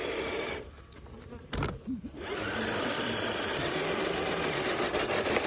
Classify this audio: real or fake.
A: fake